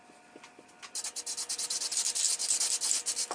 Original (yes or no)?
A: yes